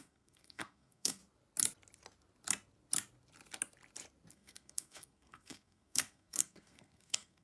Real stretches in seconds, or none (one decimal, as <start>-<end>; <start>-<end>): 1.2-4.3